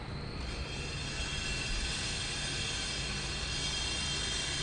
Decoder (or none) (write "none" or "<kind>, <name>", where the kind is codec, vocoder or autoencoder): none